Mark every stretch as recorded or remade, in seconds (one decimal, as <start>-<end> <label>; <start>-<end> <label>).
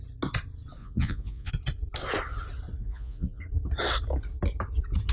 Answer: 0.0-0.8 recorded; 0.8-1.5 remade; 1.5-2.8 recorded; 2.8-3.4 remade; 3.4-5.1 recorded